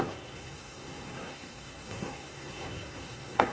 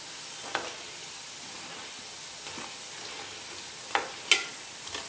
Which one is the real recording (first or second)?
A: second